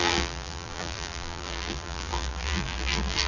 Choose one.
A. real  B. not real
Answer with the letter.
B